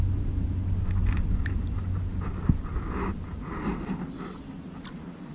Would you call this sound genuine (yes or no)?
yes